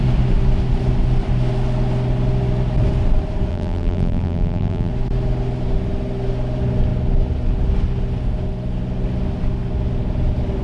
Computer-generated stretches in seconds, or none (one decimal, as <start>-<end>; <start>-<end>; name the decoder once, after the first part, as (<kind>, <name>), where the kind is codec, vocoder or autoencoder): 3.5-4.9 (vocoder, BigVGAN v2)